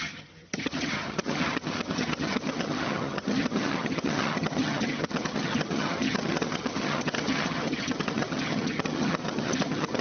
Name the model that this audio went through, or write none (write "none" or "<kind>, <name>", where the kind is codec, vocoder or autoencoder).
vocoder, HiFi-GAN